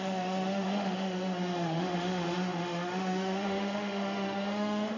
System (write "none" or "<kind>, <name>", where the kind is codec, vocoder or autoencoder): autoencoder, DAC-VAE